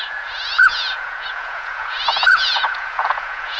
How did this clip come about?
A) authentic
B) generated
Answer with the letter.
B